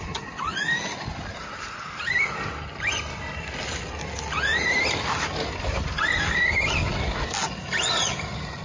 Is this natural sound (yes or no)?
yes